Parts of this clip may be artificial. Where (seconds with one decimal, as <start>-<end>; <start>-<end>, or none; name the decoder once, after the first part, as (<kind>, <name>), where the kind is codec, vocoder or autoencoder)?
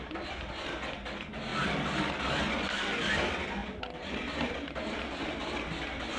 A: none